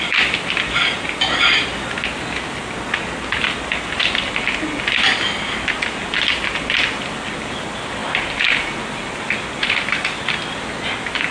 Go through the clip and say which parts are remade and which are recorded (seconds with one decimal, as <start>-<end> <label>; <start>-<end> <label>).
0.0-11.3 recorded